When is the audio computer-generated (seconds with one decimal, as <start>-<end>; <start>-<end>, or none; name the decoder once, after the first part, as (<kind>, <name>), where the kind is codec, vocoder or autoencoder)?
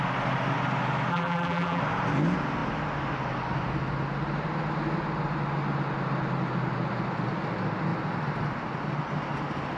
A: 1.1-1.8 (vocoder, BigVGAN v2)